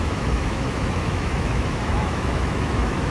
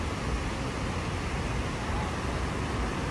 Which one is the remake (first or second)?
first